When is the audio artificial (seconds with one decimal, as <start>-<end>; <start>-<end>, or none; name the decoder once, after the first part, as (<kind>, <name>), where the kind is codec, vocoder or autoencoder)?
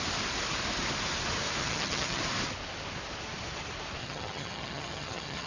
1.6-2.2 (vocoder, HiFi-GAN); 4.0-5.5